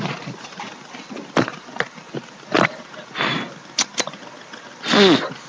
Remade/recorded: recorded